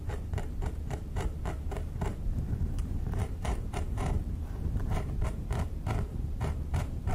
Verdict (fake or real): fake